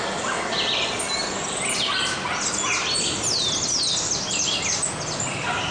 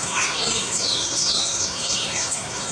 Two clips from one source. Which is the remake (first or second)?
second